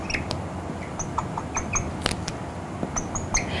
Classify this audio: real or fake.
real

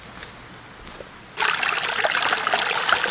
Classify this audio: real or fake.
real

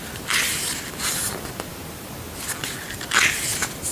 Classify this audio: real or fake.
real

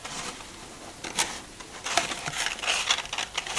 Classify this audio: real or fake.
real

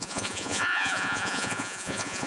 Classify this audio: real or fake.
fake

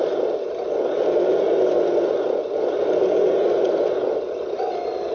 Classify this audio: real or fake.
real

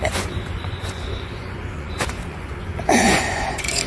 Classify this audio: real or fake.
fake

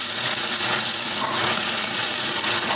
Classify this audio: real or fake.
fake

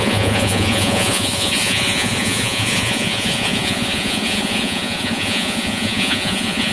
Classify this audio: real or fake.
fake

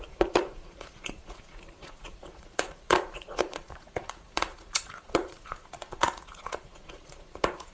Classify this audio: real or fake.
fake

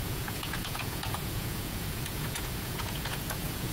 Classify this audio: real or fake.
fake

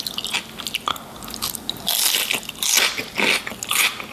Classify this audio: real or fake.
real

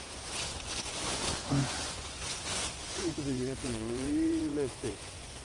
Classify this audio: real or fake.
fake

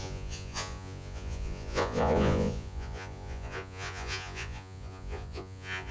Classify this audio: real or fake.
fake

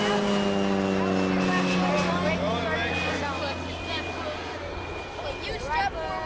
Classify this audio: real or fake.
real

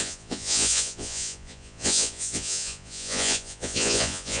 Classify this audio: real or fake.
fake